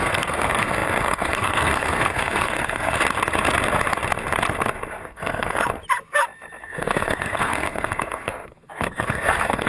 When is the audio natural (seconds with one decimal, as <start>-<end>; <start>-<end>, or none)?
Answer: 3.0-5.0; 5.6-6.6